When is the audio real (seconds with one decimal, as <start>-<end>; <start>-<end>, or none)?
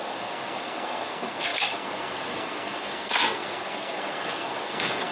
none